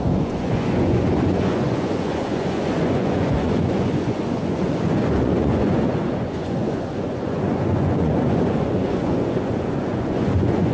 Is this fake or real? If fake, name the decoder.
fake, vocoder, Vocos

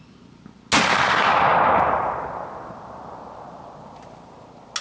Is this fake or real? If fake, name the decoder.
real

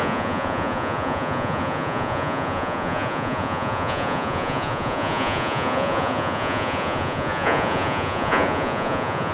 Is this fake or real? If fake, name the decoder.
fake, vocoder, Vocos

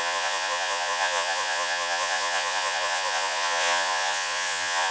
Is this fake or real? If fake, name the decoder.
fake, vocoder, Vocos